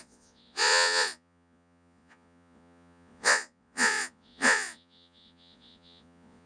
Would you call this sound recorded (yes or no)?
no